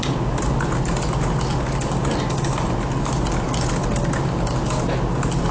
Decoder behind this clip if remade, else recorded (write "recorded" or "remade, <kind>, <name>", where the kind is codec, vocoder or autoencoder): recorded